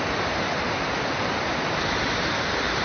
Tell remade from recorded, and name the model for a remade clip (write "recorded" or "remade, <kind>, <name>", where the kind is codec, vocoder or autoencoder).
remade, vocoder, BigVGAN v2